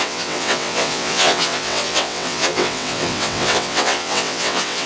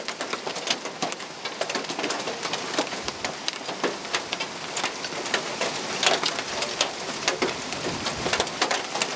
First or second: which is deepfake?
first